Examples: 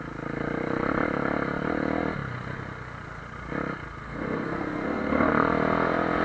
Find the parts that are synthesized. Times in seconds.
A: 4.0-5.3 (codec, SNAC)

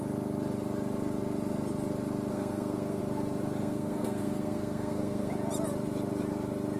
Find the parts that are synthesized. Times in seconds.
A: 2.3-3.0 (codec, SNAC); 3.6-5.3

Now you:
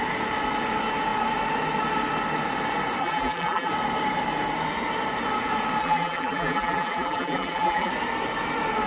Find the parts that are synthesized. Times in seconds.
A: 3.0-3.7 (vocoder, BigVGAN v2); 5.8-7.9

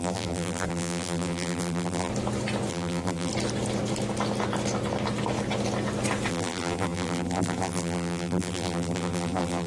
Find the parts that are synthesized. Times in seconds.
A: 0.0-2.1 (vocoder, BigVGAN v2); 2.7-3.3; 6.3-9.7

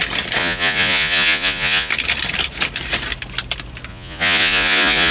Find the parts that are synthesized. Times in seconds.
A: 0.4-1.9 (vocoder, Vocos); 3.9-5.1

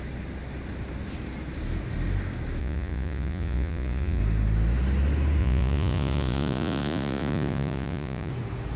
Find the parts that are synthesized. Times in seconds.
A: 2.6-4.2 (vocoder, Vocos); 5.4-8.3

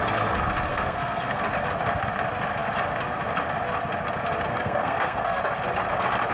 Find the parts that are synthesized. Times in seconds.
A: 0.7-1.5 (codec, SNAC); 4.5-5.4

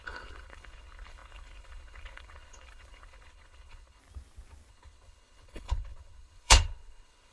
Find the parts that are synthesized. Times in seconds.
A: 0.0-4.0 (codec, HILCodec); 4.7-7.3